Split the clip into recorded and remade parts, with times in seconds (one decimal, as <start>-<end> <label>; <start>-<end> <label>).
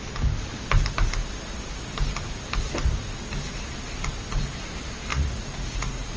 0.0-5.1 recorded; 5.1-6.2 remade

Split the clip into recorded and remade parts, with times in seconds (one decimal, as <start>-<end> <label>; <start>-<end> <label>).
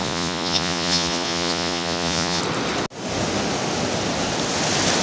0.0-2.4 remade; 2.4-5.0 recorded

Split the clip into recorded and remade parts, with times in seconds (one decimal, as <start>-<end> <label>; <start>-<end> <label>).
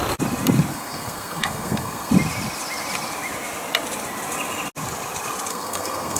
0.0-0.7 recorded; 0.7-2.1 remade; 2.1-5.5 recorded; 5.5-6.2 remade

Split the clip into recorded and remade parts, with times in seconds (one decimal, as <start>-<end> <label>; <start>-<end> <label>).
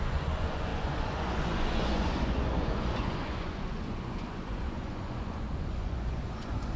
0.0-6.8 remade